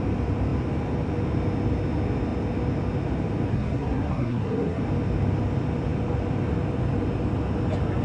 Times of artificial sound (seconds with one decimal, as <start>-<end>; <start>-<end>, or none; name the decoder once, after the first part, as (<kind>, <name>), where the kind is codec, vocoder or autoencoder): 3.5-4.8 (codec, SNAC)